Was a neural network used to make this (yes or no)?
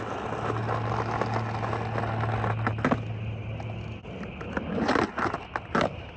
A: no